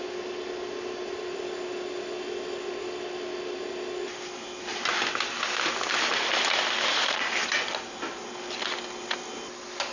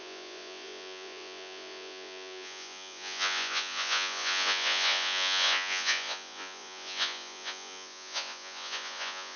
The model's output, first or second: second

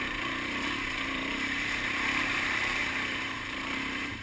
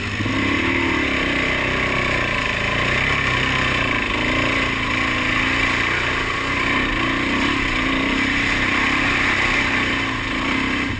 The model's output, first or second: first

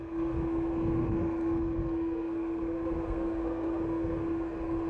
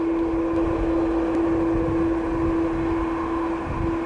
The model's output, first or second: first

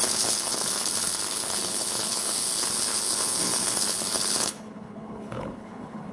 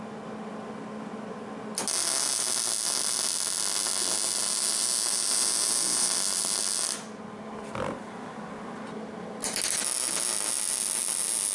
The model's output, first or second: first